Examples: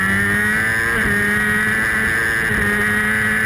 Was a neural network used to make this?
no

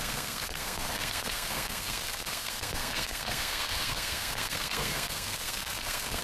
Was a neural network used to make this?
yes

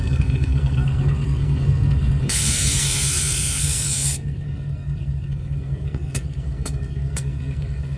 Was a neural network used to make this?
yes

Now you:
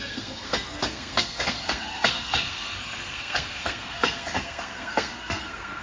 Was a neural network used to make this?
yes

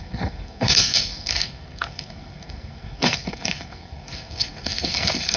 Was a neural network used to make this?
yes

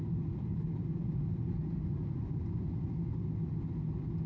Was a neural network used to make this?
no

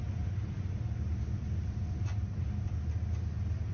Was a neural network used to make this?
no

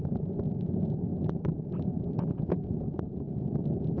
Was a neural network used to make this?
no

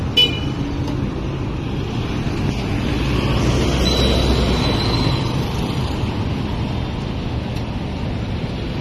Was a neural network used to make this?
no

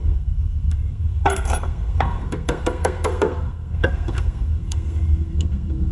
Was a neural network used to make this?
yes